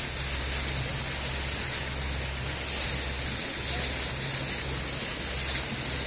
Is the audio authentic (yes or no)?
yes